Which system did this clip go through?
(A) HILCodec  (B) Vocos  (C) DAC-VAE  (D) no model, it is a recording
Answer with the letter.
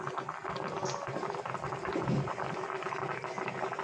D